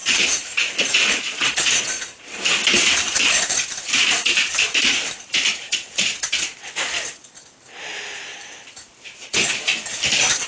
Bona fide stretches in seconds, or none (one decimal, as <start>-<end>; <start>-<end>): 0.7-2.8; 6.7-8.3; 9.4-10.5